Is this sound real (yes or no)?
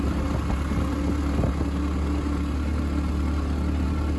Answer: yes